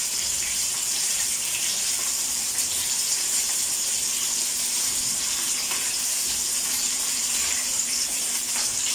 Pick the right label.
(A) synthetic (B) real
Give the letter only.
A